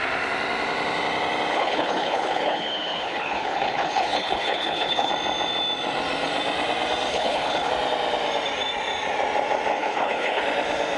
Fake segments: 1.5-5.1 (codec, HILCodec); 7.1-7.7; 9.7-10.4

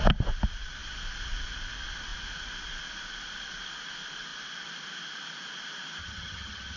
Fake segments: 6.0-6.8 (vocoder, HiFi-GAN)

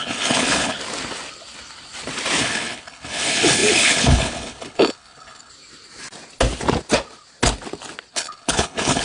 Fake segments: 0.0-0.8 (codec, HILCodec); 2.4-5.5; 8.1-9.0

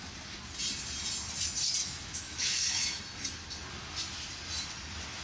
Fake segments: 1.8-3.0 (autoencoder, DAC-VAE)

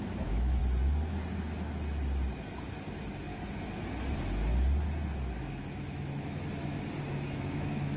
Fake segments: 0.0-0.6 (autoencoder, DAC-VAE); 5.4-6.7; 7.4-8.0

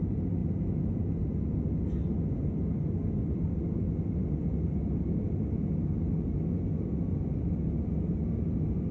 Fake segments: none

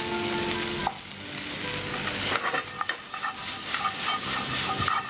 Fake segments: none

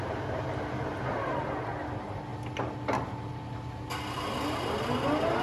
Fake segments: none